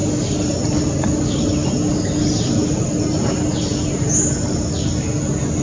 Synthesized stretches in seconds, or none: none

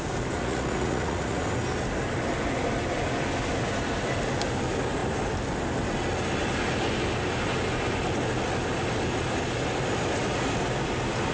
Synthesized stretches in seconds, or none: 0.4-1.4 (vocoder, Vocos)

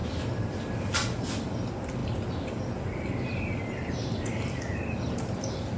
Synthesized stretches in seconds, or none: none

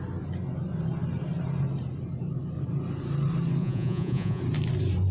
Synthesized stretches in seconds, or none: 3.6-4.4 (vocoder, Vocos)

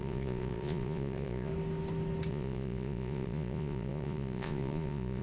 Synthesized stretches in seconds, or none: 0.0-1.5 (vocoder, Vocos); 2.3-5.2

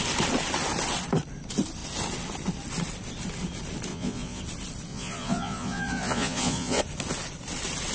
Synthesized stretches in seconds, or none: 3.9-4.4 (vocoder, Vocos); 4.9-6.8